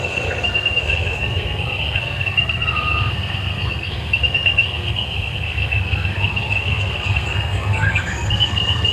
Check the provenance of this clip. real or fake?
fake